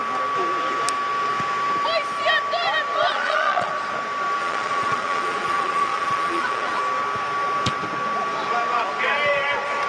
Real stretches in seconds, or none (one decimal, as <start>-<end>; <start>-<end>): 0.0-3.1; 3.7-4.4; 6.8-9.9